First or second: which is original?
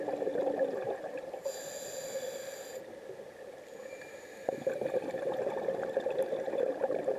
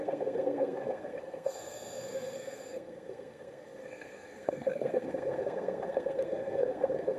first